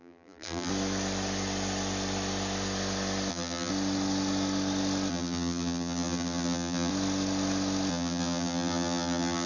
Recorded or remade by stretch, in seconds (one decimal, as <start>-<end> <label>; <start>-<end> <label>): 0.0-0.7 remade; 0.7-3.3 recorded; 3.3-3.7 remade; 3.7-5.1 recorded; 5.1-6.9 remade; 6.9-7.9 recorded; 7.9-9.5 remade

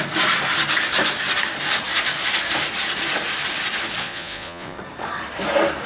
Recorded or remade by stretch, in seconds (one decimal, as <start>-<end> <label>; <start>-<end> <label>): 0.0-4.0 recorded; 4.0-4.8 remade; 4.8-5.9 recorded

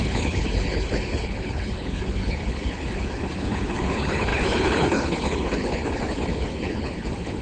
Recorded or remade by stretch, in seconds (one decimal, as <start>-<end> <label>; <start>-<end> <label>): 0.0-7.4 remade

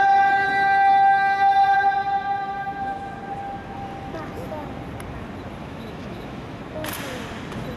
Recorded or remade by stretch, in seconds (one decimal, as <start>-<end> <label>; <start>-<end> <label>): 0.0-2.0 recorded; 2.0-3.1 remade; 3.1-5.6 recorded; 5.6-6.6 remade; 6.6-7.8 recorded

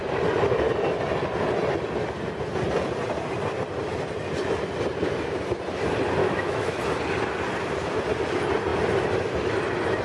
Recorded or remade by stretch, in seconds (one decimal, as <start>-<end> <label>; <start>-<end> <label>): 0.0-6.2 recorded; 6.2-6.8 remade; 6.8-10.0 recorded